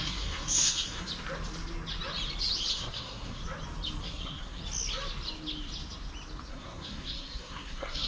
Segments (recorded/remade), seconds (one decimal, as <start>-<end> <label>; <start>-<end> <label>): 0.0-1.1 remade; 1.1-2.7 recorded; 2.7-3.4 remade; 3.4-4.0 recorded; 4.0-4.6 remade; 4.6-6.5 recorded; 6.5-8.1 remade